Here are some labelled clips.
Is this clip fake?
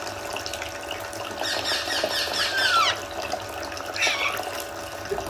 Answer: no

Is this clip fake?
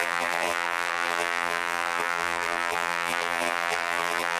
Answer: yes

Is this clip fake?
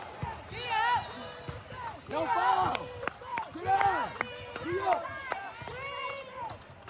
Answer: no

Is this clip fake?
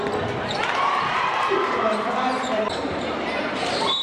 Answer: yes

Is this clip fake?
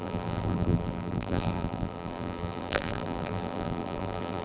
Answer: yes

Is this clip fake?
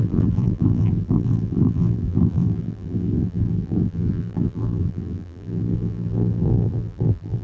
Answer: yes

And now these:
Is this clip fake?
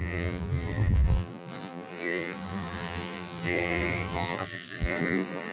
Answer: yes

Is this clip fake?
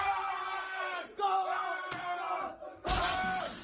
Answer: no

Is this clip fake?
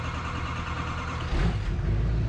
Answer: no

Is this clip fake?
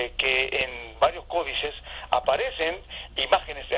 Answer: no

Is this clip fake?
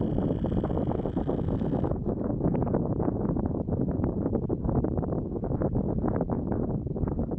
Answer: no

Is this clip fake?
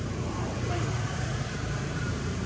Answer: yes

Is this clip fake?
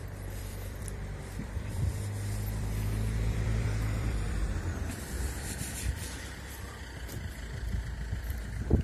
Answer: yes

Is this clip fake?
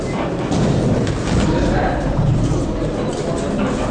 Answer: yes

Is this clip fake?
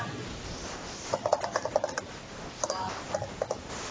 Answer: yes